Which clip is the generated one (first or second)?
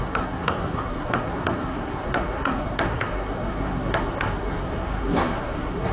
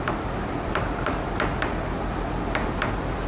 first